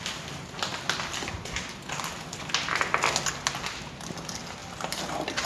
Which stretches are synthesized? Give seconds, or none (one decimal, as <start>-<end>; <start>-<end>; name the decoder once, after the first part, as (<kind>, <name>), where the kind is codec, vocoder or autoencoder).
none